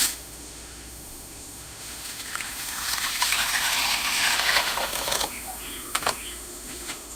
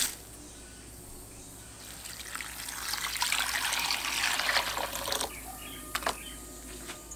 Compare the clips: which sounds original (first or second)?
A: second